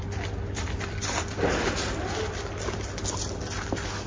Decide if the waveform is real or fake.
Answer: real